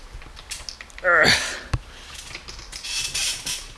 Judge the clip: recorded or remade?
recorded